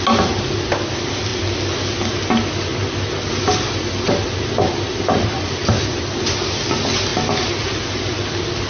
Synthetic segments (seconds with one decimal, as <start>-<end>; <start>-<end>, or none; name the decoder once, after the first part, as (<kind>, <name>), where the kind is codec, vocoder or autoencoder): none